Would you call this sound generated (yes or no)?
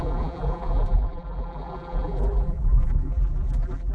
yes